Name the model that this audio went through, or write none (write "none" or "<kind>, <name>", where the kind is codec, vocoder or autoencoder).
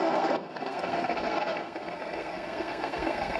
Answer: codec, SNAC